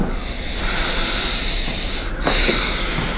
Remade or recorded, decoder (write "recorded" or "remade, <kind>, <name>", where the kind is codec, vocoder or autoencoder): recorded